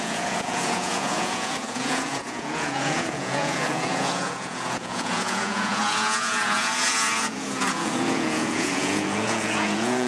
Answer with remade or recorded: remade